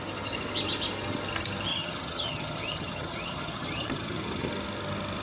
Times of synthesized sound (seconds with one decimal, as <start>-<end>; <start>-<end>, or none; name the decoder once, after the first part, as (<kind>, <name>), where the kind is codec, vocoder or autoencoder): 1.7-4.5 (vocoder, HiFi-GAN)